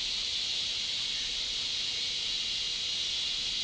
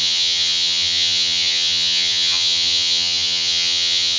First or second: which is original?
first